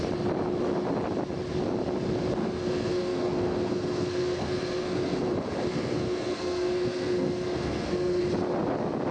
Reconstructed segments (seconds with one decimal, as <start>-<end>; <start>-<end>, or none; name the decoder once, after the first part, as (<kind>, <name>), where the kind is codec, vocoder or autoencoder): 2.4-5.2 (codec, SNAC); 5.7-8.2